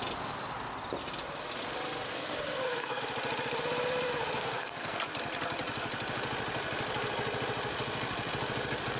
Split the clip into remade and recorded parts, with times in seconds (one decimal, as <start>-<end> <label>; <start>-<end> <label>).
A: 0.0-2.1 recorded; 2.1-3.0 remade; 3.0-4.4 recorded; 4.4-5.0 remade; 5.0-9.0 recorded